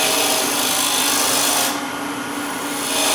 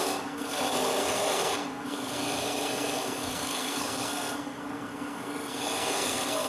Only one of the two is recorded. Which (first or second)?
first